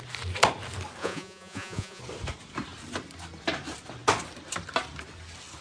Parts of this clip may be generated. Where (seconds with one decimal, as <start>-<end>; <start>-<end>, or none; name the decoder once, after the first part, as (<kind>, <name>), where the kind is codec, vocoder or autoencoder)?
1.0-2.0 (vocoder, Vocos)